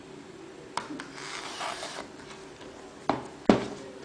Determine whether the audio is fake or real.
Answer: real